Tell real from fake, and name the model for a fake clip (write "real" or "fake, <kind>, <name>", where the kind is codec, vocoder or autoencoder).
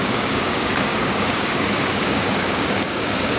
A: fake, codec, DAC